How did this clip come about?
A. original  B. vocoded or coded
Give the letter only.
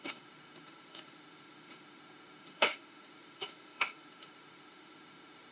B